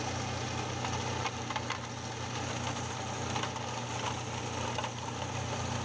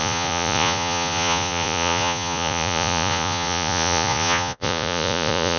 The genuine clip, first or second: first